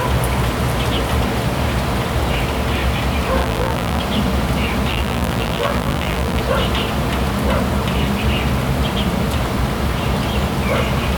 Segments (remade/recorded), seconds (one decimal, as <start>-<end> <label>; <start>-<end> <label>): 0.0-3.4 recorded; 3.4-4.0 remade; 4.0-4.9 recorded; 4.9-6.4 remade; 6.4-11.2 recorded

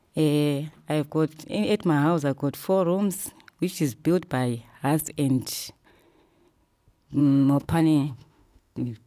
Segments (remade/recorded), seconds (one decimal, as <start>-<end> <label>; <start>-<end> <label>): 0.0-7.2 recorded; 7.2-9.1 remade